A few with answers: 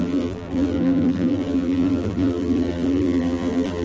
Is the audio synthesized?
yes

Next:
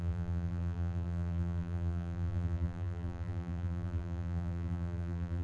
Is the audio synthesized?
yes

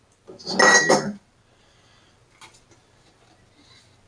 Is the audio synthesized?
no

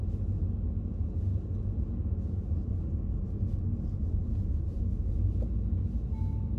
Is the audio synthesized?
no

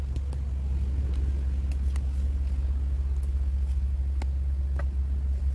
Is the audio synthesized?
no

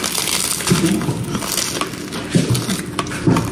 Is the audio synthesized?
no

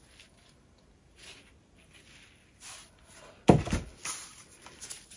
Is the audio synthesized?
yes